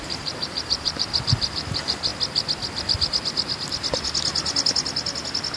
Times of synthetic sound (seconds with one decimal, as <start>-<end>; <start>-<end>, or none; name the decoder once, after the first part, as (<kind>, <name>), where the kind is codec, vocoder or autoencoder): 0.0-2.1 (vocoder, BigVGAN v2)